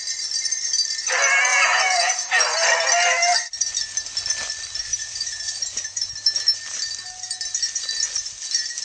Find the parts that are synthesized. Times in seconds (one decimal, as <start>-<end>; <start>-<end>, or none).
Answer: 1.5-2.3; 4.9-6.1